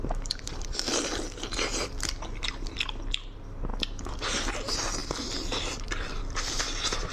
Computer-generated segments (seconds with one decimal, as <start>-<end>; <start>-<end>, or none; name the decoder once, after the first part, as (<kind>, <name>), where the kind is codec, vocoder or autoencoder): 5.0-6.4 (vocoder, BigVGAN v2)